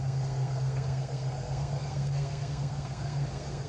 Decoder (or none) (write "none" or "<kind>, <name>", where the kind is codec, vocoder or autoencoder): codec, SNAC